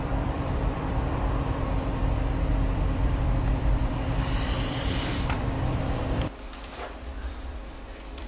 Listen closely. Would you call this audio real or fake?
fake